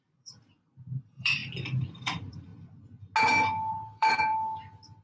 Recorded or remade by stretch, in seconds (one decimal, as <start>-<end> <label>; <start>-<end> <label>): 0.0-1.4 remade; 1.4-2.0 recorded; 2.0-2.5 remade; 2.5-3.7 recorded; 3.7-4.3 remade; 4.3-5.0 recorded